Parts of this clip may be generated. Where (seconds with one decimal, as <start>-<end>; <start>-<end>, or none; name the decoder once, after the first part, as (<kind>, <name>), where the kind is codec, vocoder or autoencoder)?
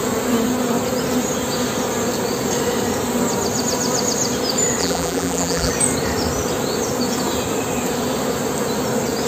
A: 4.8-5.7 (vocoder, BigVGAN v2)